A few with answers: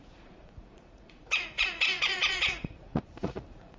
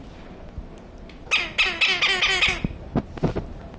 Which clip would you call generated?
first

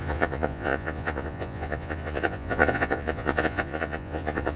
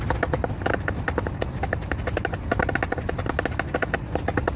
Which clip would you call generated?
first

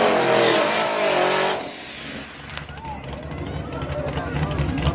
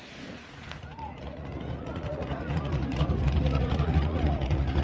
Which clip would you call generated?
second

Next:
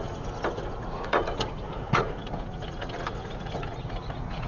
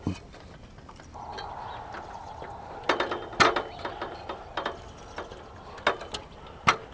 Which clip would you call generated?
first